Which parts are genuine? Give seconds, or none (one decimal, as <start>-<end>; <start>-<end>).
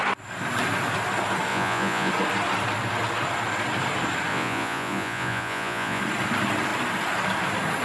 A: 0.0-1.5; 2.1-4.3; 6.0-7.8